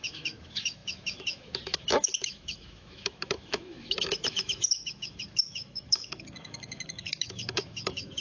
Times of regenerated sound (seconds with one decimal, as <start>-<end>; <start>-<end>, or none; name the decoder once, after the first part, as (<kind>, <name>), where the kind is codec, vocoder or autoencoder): 0.0-8.2 (autoencoder, DAC-VAE)